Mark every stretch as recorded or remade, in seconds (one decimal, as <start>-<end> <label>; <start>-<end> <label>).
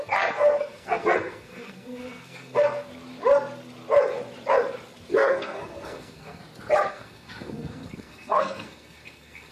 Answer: 0.0-2.9 remade; 2.9-5.1 recorded; 5.1-6.4 remade; 6.4-6.9 recorded; 6.9-9.5 remade